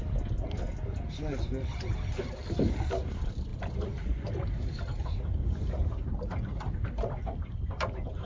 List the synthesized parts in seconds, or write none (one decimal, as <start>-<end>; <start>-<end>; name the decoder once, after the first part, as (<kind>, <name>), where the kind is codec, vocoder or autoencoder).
none